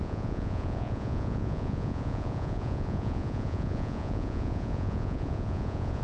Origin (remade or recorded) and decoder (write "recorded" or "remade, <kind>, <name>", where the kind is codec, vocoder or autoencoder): remade, vocoder, Vocos